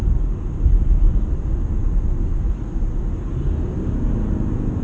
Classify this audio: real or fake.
real